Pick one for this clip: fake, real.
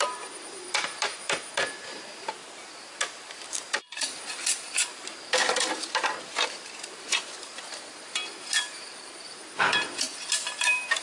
fake